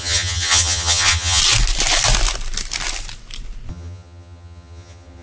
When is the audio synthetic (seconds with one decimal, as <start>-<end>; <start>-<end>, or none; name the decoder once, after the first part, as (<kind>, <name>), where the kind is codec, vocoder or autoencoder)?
0.0-1.4 (vocoder, HiFi-GAN); 3.7-5.2